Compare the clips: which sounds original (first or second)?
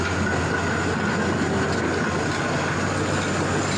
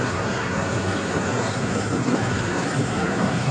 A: first